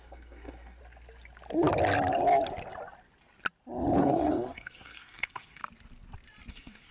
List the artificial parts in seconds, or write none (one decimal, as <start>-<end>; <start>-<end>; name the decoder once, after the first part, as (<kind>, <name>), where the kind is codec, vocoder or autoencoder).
0.0-0.8 (codec, SNAC); 4.0-5.6; 6.5-6.9

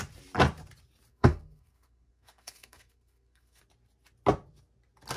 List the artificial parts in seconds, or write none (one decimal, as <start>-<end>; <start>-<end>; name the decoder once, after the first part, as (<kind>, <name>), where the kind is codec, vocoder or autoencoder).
1.1-3.6 (codec, SNAC)

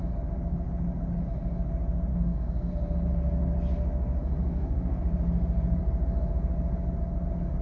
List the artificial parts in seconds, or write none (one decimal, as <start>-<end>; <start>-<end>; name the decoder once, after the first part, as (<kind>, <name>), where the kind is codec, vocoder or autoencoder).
2.1-2.7 (codec, SNAC); 4.5-5.0

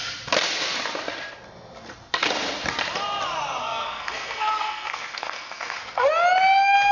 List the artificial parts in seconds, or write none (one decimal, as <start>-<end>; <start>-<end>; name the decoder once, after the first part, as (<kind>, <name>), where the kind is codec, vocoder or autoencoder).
3.6-6.1 (codec, SNAC)

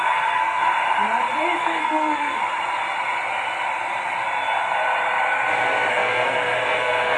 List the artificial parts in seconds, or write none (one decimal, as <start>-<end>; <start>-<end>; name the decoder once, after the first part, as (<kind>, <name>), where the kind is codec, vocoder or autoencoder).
0.0-0.6 (codec, SNAC); 1.6-2.4; 5.9-7.2